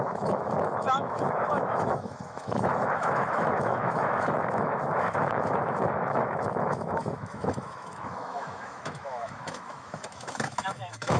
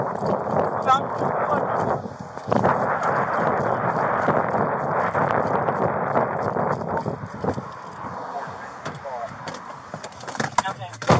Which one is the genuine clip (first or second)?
second